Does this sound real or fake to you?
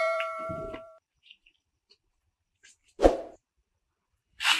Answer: fake